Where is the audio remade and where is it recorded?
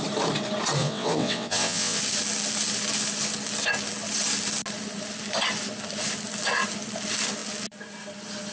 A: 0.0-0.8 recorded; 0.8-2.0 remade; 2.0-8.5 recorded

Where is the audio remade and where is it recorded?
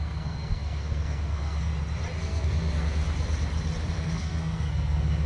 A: 0.0-1.7 remade; 1.7-2.2 recorded; 2.2-3.0 remade; 3.0-3.9 recorded; 3.9-5.3 remade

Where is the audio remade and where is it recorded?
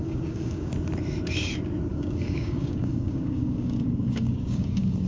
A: 0.0-0.7 remade; 0.7-1.9 recorded; 1.9-5.1 remade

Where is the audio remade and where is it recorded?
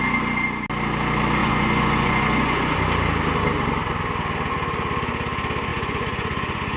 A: 0.0-1.4 recorded; 1.4-2.7 remade; 2.7-5.7 recorded; 5.7-6.8 remade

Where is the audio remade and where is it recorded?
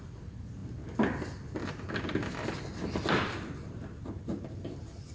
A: 0.0-5.1 recorded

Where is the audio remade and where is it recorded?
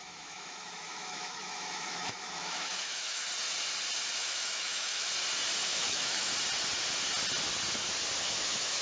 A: 0.0-3.2 remade; 3.2-4.2 recorded; 4.2-5.1 remade; 5.1-5.6 recorded; 5.6-6.3 remade; 6.3-8.2 recorded; 8.2-8.8 remade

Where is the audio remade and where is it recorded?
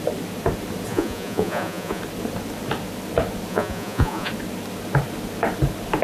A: 0.0-0.9 recorded; 0.9-2.0 remade; 2.0-3.5 recorded; 3.5-4.3 remade; 4.3-6.0 recorded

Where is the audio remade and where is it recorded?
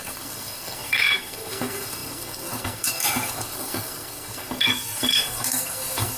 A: 0.0-6.2 remade